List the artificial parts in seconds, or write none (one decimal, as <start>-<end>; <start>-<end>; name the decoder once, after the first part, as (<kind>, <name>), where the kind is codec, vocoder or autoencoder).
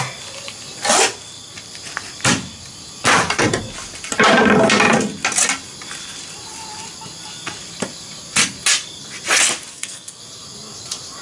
9.7-10.2 (codec, SNAC)